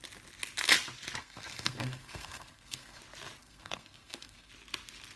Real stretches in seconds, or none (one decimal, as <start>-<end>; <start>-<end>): 0.0-1.2; 3.0-3.4; 4.5-5.2